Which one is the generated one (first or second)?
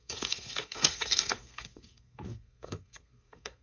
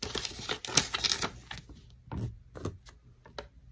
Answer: first